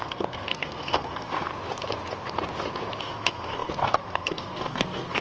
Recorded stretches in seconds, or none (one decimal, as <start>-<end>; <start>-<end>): 1.5-3.0